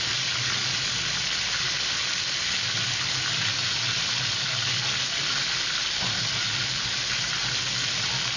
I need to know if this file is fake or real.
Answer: real